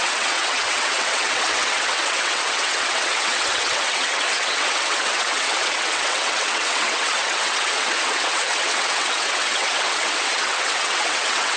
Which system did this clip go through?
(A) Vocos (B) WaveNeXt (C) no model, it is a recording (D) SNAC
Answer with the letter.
B